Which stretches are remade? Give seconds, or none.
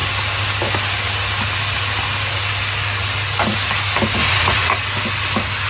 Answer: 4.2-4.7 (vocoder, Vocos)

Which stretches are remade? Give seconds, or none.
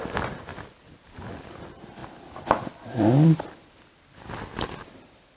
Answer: 0.0-0.5 (vocoder, BigVGAN v2); 1.5-5.4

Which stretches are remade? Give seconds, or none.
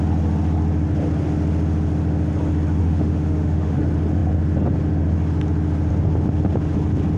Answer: 2.8-3.8 (autoencoder, DAC-VAE)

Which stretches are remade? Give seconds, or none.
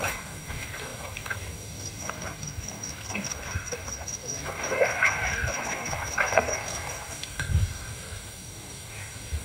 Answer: 0.0-9.4 (codec, DAC)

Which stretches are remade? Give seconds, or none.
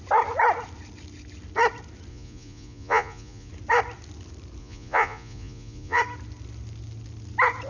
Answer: 2.1-3.5 (vocoder, Vocos); 4.6-6.0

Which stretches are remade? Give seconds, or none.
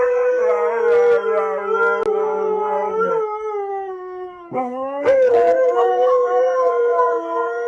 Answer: 0.0-0.4 (codec, SNAC); 2.1-3.1; 3.7-7.7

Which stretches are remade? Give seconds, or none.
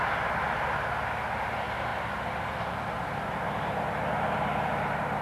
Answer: 1.9-3.0 (vocoder, BigVGAN v2)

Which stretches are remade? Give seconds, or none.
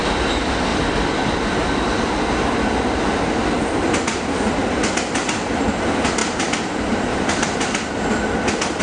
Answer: 0.7-1.7 (vocoder, BigVGAN v2); 6.2-7.9